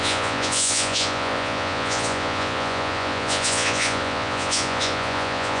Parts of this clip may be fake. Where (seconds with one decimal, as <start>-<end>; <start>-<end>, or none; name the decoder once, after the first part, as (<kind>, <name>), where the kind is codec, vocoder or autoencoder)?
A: 0.0-5.6 (vocoder, Vocos)